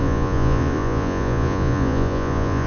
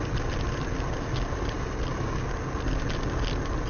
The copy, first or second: first